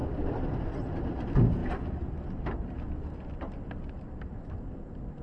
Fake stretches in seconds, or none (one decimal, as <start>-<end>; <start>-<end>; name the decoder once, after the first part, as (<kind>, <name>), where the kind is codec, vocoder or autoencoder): none